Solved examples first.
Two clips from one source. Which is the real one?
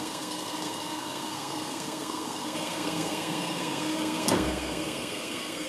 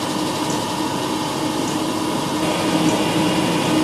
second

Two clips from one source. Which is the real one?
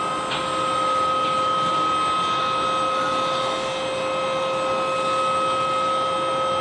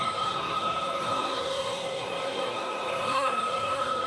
first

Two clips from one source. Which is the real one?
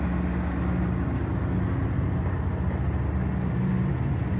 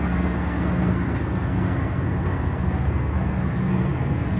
first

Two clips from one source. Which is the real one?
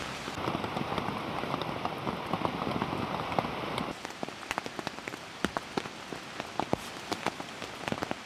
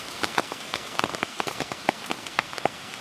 first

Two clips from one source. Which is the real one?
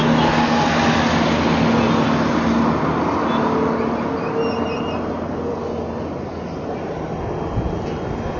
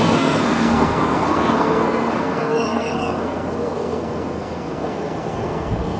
first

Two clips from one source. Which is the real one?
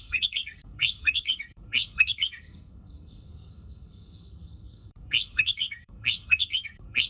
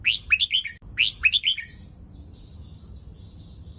second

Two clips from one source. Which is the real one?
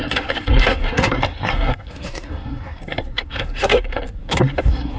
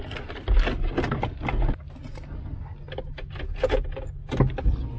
second